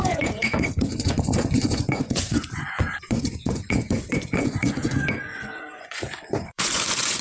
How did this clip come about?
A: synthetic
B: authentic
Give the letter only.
A